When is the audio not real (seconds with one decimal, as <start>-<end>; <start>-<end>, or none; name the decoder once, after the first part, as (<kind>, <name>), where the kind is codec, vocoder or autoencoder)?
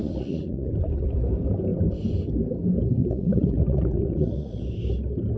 0.0-0.7 (vocoder, Vocos); 3.0-4.6